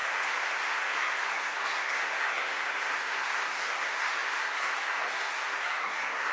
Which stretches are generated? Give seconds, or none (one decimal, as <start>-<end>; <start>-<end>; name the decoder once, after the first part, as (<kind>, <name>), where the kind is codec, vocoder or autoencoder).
0.0-6.3 (codec, SNAC)